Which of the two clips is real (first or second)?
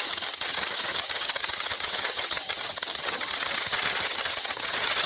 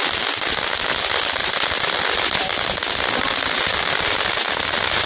second